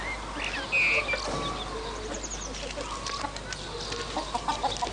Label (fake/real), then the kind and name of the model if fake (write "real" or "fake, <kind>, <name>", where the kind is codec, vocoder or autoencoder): real